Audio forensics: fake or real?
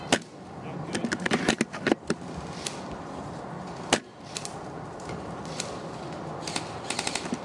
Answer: real